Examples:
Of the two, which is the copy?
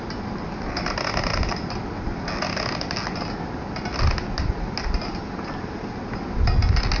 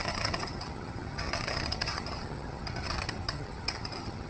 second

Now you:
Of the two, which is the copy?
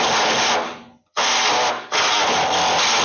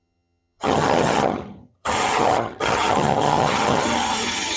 second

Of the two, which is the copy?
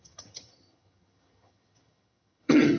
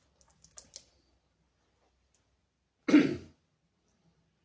first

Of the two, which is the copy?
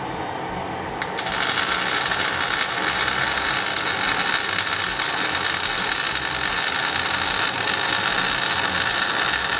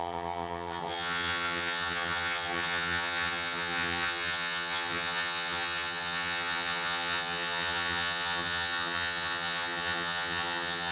second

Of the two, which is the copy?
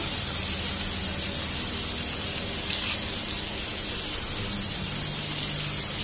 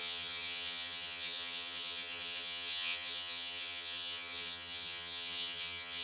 second